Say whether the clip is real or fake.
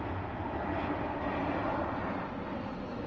real